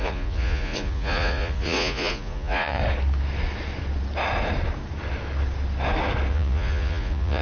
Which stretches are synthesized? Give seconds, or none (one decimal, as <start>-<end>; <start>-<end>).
0.0-2.8; 6.3-7.4